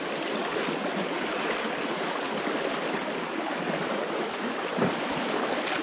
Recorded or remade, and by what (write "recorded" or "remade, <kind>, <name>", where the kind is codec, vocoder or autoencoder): recorded